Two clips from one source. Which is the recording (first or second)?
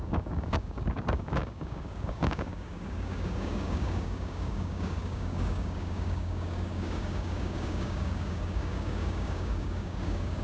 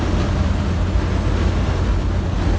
second